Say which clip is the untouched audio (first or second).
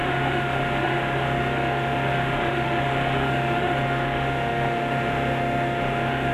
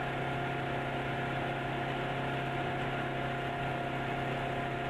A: second